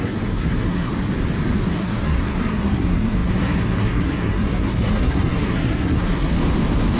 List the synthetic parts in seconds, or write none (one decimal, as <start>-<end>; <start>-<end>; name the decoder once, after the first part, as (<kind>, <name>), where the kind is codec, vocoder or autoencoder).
0.0-0.9 (codec, SNAC); 1.7-6.3